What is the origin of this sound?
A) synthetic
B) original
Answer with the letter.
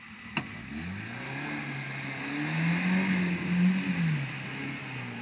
B